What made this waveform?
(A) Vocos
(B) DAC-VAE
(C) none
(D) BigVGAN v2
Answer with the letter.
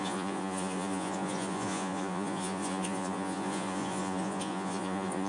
A